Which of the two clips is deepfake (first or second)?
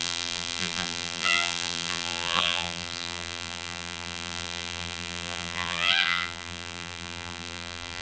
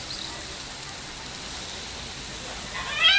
first